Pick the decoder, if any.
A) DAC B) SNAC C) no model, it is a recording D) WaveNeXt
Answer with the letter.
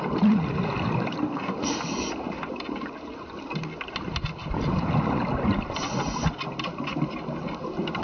C